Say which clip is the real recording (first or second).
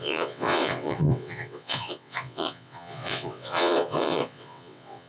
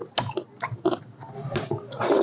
second